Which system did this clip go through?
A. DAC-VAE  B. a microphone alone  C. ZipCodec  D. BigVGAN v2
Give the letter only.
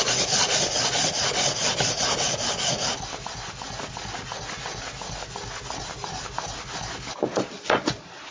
B